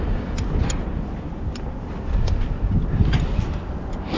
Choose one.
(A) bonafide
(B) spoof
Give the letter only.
A